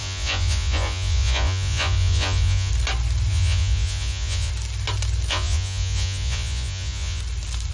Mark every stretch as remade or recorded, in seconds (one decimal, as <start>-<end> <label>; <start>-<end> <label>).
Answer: 0.0-2.7 remade; 2.7-3.3 recorded; 3.3-4.5 remade; 4.5-5.3 recorded; 5.3-7.2 remade; 7.2-7.7 recorded